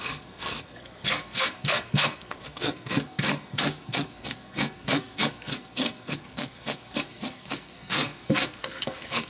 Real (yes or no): no